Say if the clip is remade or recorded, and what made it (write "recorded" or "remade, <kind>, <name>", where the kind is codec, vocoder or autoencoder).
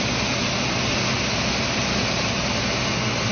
recorded